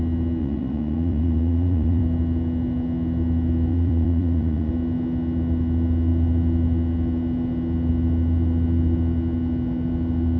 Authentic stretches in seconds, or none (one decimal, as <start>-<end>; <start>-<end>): 0.0-0.4; 2.0-3.7; 4.7-10.4